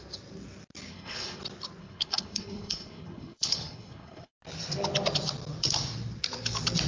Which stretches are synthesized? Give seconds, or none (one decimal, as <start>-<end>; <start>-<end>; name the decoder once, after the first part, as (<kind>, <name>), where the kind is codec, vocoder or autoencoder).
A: 0.9-1.4 (codec, HILCodec); 1.8-4.3